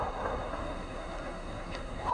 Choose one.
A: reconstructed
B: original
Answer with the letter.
A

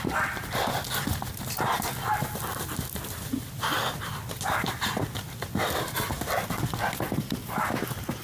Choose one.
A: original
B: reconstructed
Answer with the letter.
A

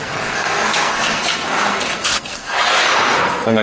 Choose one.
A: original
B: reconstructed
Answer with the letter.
B